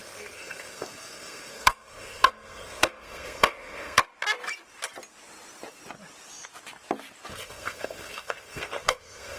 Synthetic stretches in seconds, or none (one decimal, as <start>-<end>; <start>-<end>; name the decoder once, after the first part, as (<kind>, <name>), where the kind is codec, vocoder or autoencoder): 0.0-4.0 (codec, SNAC); 7.3-9.4